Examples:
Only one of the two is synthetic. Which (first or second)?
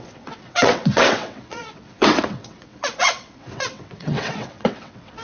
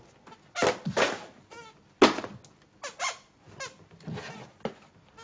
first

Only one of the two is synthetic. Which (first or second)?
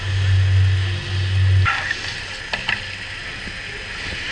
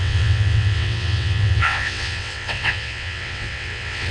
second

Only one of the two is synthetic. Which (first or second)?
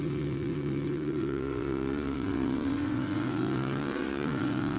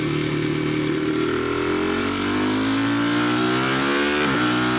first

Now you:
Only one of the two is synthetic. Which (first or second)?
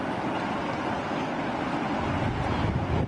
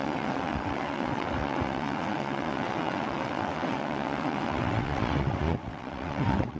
second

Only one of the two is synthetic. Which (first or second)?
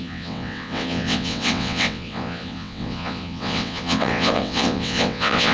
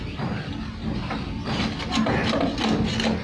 first